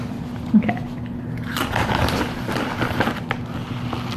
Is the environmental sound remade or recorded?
recorded